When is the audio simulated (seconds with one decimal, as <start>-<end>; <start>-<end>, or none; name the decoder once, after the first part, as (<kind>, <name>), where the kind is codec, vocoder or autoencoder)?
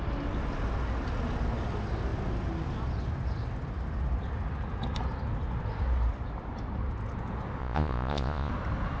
7.6-8.5 (vocoder, Vocos)